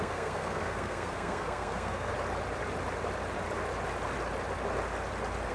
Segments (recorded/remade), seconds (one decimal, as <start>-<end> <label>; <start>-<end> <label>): 0.0-2.1 remade; 2.1-5.5 recorded